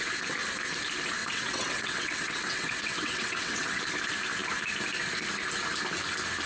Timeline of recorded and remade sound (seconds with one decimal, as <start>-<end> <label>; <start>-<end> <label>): 0.0-1.2 recorded; 1.2-3.8 remade; 3.8-6.5 recorded